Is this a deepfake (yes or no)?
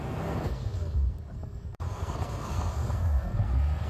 yes